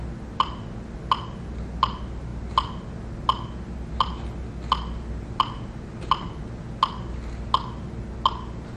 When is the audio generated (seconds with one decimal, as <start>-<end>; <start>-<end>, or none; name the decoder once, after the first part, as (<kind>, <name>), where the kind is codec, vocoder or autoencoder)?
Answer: none